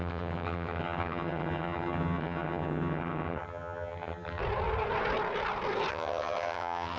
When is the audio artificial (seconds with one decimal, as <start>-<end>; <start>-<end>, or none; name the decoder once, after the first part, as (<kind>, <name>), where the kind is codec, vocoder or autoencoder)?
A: 0.0-4.4 (vocoder, HiFi-GAN); 5.9-7.0